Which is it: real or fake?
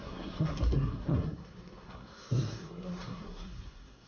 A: fake